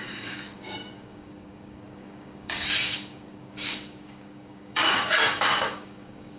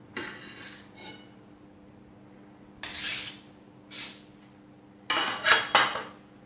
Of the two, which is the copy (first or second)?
first